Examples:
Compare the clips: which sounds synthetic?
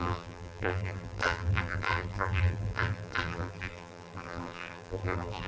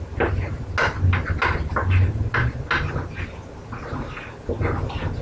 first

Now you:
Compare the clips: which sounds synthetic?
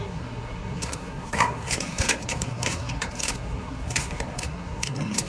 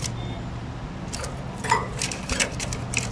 first